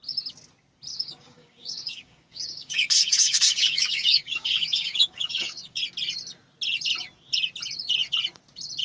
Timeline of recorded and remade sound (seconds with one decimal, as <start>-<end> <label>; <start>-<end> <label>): 0.0-0.9 recorded; 0.9-5.8 remade; 5.8-8.8 recorded